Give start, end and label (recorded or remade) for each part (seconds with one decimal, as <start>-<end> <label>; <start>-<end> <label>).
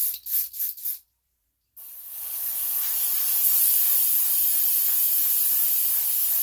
0.0-0.8 recorded; 0.8-3.1 remade; 3.1-4.2 recorded; 4.2-6.0 remade; 6.0-6.4 recorded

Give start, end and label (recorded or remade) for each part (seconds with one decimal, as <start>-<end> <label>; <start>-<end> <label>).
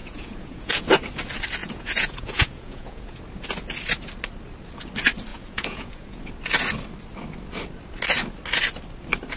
0.0-0.8 remade; 0.8-1.6 recorded; 1.6-3.2 remade; 3.2-5.3 recorded; 5.3-6.2 remade; 6.2-9.4 recorded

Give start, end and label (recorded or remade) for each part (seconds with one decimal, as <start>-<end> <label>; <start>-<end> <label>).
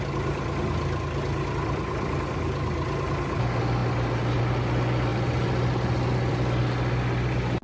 0.0-7.6 recorded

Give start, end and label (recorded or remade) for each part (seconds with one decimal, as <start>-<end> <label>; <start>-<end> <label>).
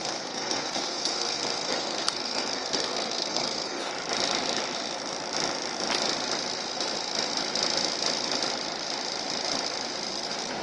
0.0-3.9 remade; 3.9-10.6 recorded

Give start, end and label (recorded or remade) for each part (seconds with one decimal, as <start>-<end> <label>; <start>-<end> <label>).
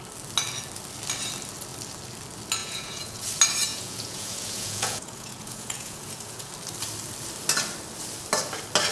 0.0-2.6 recorded; 2.6-3.3 remade; 3.3-3.7 recorded; 3.7-6.5 remade; 6.5-8.9 recorded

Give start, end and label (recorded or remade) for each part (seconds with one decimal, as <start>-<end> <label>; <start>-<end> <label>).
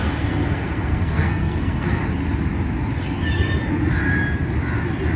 0.0-2.0 remade; 2.0-5.2 recorded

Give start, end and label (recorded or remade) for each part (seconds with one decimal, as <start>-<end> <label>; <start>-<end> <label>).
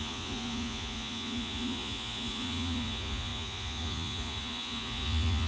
0.0-5.5 remade